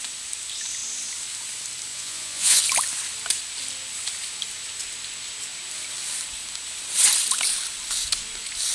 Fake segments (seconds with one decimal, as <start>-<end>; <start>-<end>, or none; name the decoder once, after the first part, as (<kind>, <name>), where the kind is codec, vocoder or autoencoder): 1.9-2.6 (vocoder, Vocos)